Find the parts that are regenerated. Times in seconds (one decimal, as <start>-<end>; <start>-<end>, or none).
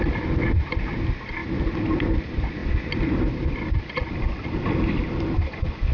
none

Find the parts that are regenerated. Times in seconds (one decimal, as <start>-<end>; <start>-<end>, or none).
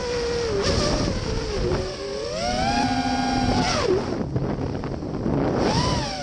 none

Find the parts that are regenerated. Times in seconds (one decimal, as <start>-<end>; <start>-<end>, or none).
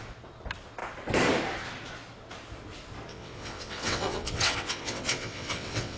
3.1-6.0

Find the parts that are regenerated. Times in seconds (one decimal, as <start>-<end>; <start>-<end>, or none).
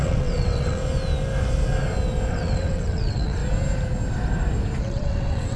0.0-0.8; 2.3-3.4; 4.8-5.6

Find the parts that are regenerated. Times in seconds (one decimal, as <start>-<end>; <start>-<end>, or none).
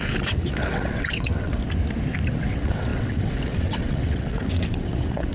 0.0-1.6; 2.5-5.3